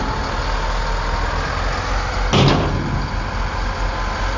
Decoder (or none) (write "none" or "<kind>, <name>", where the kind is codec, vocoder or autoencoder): none